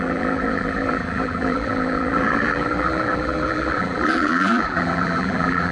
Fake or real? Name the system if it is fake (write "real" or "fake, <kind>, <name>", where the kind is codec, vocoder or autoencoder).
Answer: fake, vocoder, BigVGAN v2